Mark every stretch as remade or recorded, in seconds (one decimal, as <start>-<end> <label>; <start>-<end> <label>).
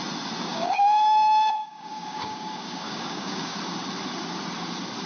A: 0.0-0.5 recorded; 0.5-3.6 remade; 3.6-5.1 recorded